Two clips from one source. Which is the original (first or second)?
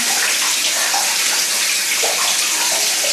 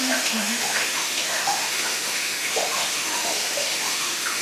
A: first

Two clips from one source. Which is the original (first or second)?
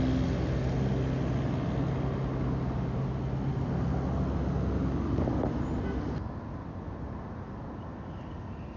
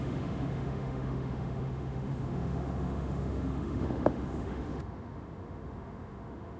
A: first